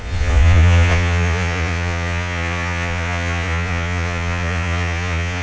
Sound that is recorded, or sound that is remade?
remade